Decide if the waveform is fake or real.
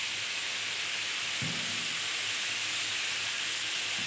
real